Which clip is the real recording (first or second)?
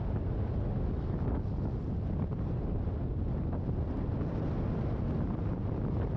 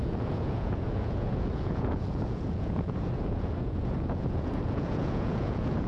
first